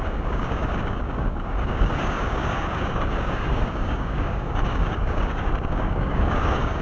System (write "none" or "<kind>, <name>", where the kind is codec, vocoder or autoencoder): codec, DAC